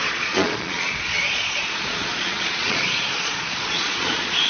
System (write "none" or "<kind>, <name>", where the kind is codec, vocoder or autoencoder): vocoder, Vocos